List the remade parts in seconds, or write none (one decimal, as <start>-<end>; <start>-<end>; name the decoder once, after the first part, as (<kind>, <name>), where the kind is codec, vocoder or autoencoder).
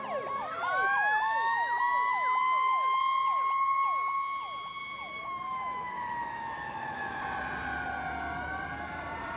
2.4-3.0 (autoencoder, DAC-VAE); 5.1-7.2